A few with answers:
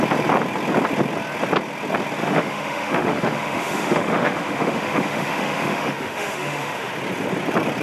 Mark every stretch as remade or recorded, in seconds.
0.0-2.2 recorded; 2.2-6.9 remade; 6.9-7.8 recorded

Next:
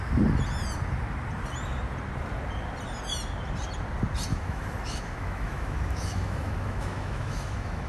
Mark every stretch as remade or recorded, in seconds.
0.0-4.3 recorded; 4.3-7.9 remade

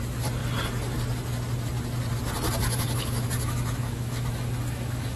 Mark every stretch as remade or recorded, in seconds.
0.0-2.6 recorded; 2.6-5.2 remade